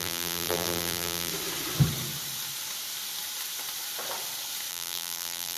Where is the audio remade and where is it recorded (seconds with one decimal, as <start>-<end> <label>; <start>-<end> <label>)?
0.0-1.3 remade; 1.3-4.7 recorded; 4.7-5.6 remade